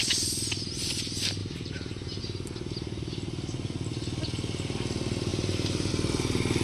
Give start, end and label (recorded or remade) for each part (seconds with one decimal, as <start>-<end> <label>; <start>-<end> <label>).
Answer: 0.0-1.4 recorded; 1.4-2.2 remade; 2.2-5.3 recorded; 5.3-5.9 remade; 5.9-6.6 recorded